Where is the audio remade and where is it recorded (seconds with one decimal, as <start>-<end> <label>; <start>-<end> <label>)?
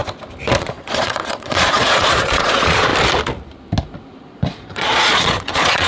0.0-0.6 recorded; 0.6-2.9 remade; 2.9-4.2 recorded; 4.2-5.9 remade